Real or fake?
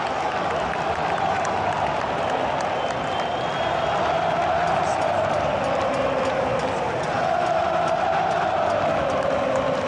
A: real